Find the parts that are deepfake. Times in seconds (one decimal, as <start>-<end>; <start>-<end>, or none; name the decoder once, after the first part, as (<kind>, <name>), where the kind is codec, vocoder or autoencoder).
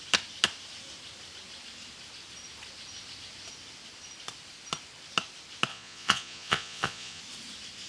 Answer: 5.7-7.2 (vocoder, Vocos)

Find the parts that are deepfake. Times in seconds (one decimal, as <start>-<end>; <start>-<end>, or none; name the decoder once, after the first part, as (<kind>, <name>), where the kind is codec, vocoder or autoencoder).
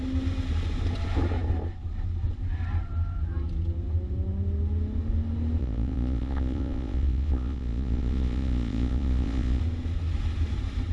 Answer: 5.6-9.6 (vocoder, Vocos)